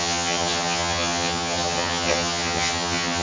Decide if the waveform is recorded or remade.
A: remade